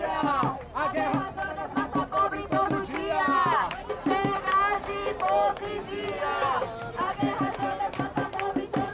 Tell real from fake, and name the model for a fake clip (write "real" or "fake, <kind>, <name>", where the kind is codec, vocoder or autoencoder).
real